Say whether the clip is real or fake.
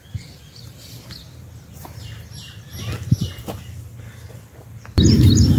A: real